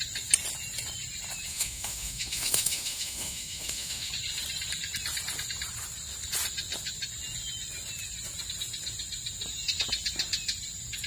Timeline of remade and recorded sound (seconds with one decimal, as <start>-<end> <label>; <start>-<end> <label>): 0.0-1.5 recorded; 1.5-4.1 remade; 4.1-11.1 recorded